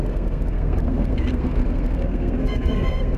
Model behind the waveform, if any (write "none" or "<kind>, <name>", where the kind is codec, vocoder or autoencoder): codec, SNAC